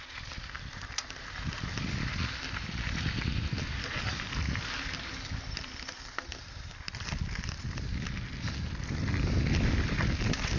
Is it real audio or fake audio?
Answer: real